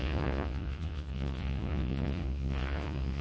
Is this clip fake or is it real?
fake